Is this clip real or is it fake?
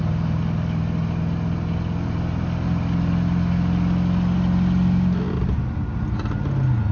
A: real